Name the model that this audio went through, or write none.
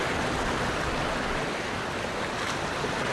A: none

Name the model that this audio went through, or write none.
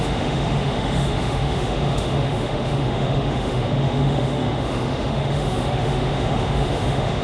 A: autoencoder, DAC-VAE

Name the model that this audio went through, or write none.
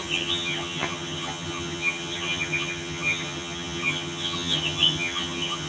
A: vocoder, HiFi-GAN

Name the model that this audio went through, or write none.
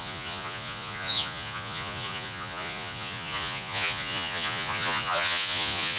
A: vocoder, Vocos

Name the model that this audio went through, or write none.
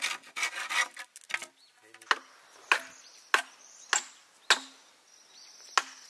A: none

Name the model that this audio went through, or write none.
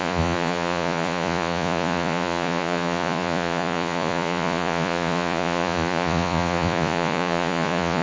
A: vocoder, Vocos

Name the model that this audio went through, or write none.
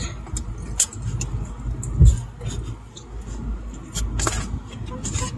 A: none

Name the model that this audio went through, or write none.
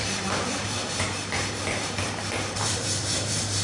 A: vocoder, BigVGAN v2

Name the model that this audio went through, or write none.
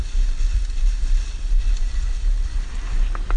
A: none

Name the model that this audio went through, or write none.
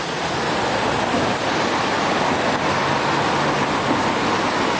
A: none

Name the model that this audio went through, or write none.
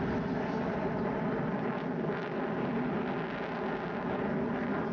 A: none